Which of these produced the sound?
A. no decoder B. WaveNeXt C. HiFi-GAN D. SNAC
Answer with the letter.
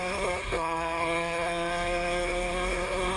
D